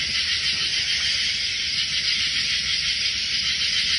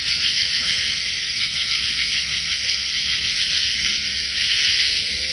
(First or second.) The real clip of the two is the first